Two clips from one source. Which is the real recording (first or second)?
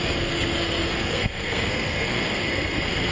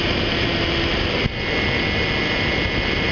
second